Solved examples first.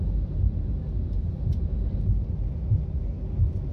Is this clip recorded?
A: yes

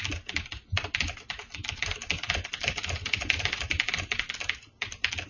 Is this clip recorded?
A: no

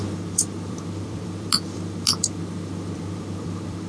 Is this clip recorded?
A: no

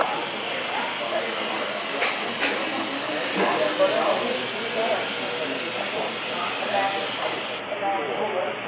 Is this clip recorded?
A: yes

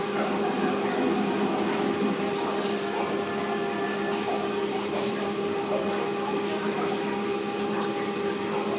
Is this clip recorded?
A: yes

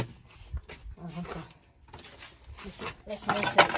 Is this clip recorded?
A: yes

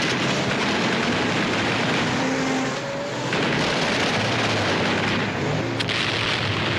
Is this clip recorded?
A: yes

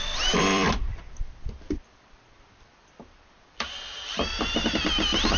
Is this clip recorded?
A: no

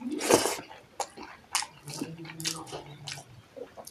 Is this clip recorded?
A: yes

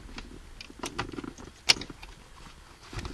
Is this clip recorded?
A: yes